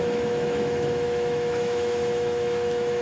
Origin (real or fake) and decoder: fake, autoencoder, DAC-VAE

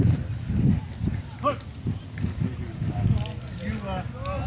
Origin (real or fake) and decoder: real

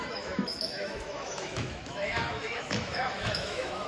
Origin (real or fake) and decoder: fake, autoencoder, DAC-VAE